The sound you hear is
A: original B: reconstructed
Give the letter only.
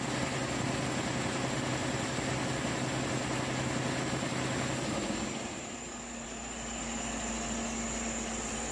A